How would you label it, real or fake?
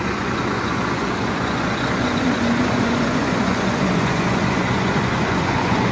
fake